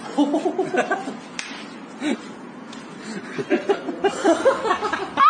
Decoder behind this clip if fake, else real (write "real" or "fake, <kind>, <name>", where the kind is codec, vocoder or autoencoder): real